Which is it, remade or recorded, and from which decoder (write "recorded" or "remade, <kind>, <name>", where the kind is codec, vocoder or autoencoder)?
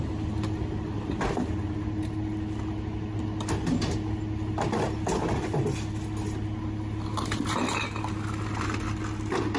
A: recorded